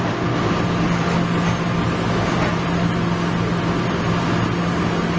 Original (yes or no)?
yes